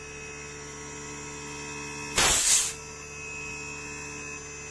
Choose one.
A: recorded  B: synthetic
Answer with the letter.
A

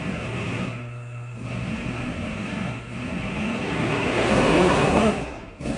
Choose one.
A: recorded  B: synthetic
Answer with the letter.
B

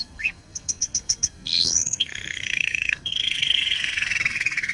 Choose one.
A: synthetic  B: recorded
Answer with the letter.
A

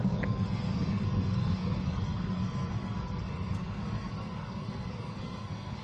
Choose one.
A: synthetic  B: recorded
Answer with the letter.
A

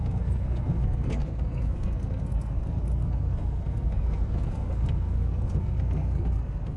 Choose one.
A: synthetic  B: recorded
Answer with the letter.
A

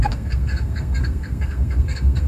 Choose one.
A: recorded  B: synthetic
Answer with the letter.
B